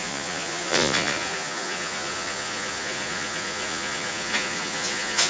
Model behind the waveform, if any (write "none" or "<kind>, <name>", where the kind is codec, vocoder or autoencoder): vocoder, Vocos